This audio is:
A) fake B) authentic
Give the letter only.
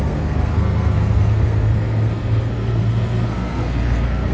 A